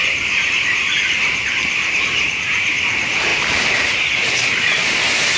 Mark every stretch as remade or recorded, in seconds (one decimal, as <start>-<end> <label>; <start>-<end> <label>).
0.0-5.4 remade